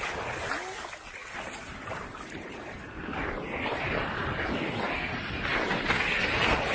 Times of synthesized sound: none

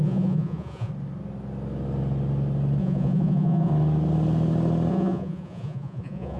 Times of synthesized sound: 0.0-0.9; 2.8-3.7; 4.9-6.4